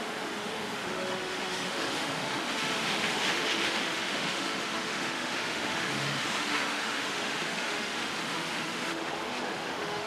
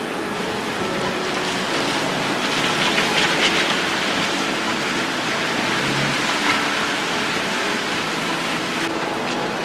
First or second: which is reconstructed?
first